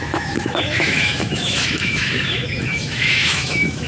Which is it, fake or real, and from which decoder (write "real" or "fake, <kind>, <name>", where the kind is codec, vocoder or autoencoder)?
fake, autoencoder, DAC-VAE